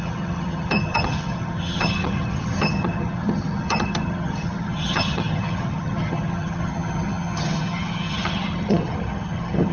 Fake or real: fake